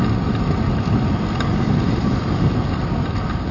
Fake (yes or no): no